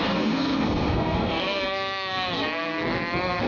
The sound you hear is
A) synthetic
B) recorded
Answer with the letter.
A